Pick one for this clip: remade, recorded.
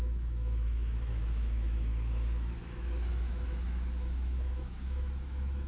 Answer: remade